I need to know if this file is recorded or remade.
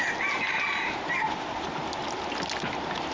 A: recorded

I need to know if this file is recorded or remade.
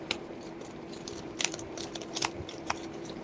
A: remade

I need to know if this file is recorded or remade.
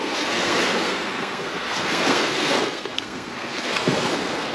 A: remade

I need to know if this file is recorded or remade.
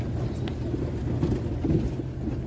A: recorded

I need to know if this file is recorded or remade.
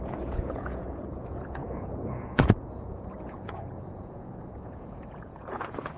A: remade